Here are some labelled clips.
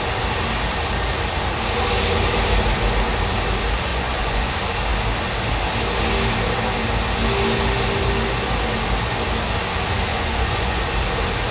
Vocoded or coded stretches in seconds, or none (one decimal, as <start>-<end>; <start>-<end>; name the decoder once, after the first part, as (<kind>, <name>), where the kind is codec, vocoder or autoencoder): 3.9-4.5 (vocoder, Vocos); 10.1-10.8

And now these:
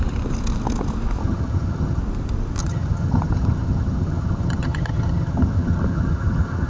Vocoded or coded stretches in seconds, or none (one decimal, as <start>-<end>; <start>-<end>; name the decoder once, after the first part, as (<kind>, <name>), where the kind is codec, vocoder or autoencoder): 1.2-2.0 (vocoder, HiFi-GAN); 2.6-6.7

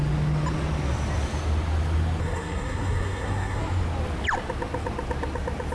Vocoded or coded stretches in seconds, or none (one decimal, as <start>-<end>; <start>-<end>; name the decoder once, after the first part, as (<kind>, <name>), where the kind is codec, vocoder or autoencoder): 2.2-3.6 (codec, SNAC)